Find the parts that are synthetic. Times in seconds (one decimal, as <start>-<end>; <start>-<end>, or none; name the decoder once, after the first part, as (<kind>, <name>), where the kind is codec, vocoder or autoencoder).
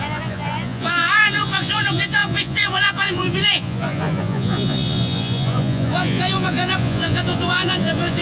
0.0-8.2 (vocoder, Vocos)